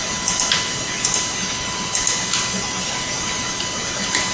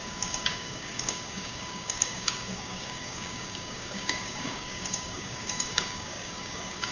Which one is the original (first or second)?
first